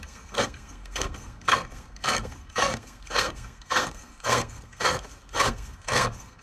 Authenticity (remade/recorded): remade